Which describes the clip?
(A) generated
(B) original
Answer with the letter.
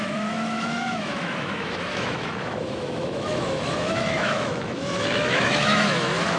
A